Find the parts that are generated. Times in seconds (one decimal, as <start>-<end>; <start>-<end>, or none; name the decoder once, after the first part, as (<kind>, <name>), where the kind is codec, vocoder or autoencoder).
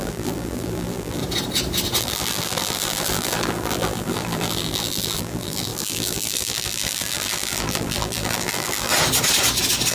0.0-1.2 (vocoder, BigVGAN v2); 2.0-8.9